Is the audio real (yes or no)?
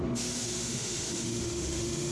no